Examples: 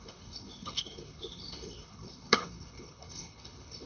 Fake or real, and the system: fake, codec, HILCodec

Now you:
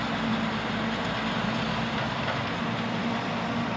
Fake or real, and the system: real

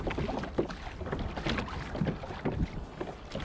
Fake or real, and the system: real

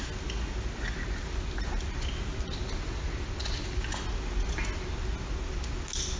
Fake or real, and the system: real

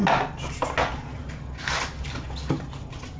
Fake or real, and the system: real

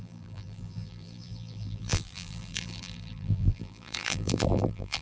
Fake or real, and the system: fake, vocoder, BigVGAN v2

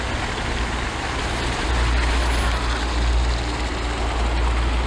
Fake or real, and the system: real